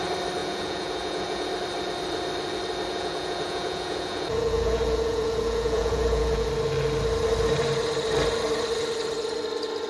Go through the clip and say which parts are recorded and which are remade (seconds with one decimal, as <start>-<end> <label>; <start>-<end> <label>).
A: 0.0-0.4 recorded; 0.4-1.5 remade; 1.5-2.9 recorded; 2.9-6.5 remade; 6.5-9.9 recorded